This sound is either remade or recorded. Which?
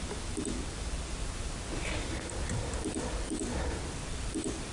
recorded